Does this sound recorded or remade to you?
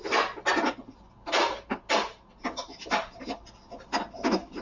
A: recorded